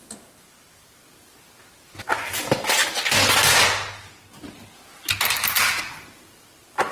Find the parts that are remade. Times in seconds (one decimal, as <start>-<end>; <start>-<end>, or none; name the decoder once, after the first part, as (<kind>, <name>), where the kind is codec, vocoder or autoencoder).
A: none